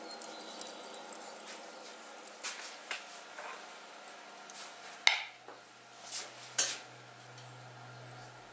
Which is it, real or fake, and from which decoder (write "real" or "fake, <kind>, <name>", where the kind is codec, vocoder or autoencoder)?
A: real